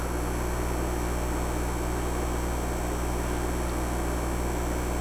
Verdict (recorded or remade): recorded